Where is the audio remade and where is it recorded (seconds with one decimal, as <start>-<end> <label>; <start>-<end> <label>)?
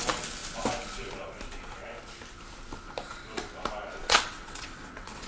0.0-4.0 recorded; 4.0-5.3 remade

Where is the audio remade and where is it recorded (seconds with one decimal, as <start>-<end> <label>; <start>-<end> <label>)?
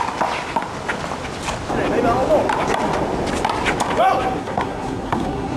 0.0-4.4 recorded; 4.4-5.6 remade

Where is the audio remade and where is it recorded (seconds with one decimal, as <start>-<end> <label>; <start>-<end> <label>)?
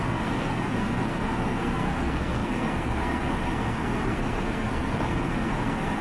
0.0-6.0 remade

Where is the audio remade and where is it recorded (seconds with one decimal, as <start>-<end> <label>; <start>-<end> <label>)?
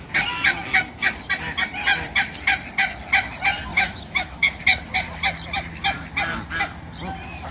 0.0-3.7 recorded; 3.7-4.6 remade; 4.6-7.5 recorded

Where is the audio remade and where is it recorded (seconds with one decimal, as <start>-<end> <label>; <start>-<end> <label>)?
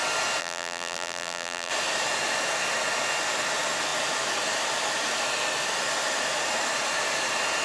0.0-0.4 recorded; 0.4-1.7 remade; 1.7-7.6 recorded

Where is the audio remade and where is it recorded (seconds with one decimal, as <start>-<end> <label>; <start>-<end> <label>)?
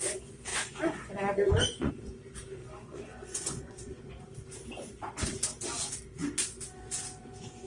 0.0-0.5 recorded; 0.5-1.9 remade; 1.9-2.6 recorded; 2.6-4.0 remade; 4.0-7.7 recorded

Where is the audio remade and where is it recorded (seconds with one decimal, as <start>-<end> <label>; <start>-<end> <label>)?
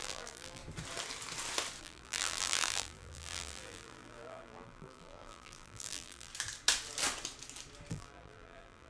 0.0-0.6 remade; 0.6-1.8 recorded; 1.8-6.3 remade; 6.3-7.9 recorded; 7.9-8.9 remade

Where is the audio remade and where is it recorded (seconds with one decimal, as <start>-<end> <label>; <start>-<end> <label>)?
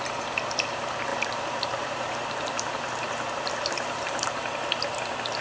0.0-1.1 recorded; 1.1-4.3 remade; 4.3-5.4 recorded